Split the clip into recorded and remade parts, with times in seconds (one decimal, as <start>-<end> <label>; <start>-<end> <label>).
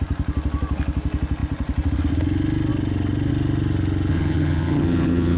0.0-4.1 recorded; 4.1-5.4 remade